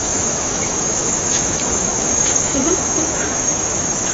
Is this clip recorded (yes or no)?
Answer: no